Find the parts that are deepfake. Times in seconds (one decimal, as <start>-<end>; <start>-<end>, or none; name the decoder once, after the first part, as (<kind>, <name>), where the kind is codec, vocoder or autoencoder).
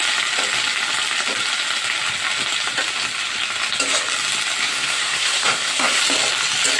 4.7-6.0 (codec, SNAC)